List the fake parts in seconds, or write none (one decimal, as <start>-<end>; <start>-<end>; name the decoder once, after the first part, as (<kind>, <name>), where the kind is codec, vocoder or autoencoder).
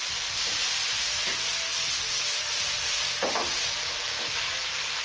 0.0-5.0 (vocoder, BigVGAN v2)